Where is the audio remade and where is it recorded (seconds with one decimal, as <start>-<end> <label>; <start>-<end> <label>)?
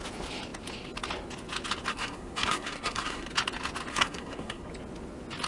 0.0-1.9 recorded; 1.9-3.3 remade; 3.3-3.9 recorded; 3.9-4.7 remade; 4.7-5.5 recorded